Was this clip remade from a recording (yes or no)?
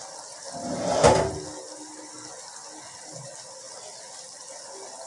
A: no